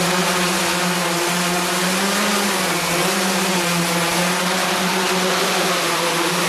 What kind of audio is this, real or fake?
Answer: real